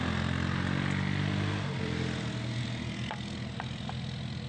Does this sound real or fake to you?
real